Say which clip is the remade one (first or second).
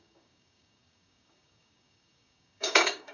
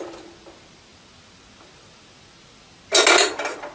first